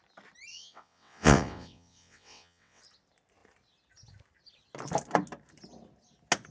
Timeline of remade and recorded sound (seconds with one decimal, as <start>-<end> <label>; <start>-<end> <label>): 0.0-0.5 recorded; 0.5-2.8 remade; 2.8-6.5 recorded